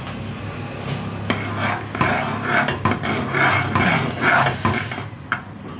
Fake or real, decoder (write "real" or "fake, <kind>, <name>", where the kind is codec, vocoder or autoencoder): real